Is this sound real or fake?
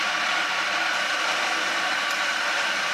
fake